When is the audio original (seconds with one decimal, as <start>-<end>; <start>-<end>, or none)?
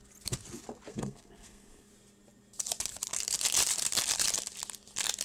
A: 0.0-0.9; 1.9-5.2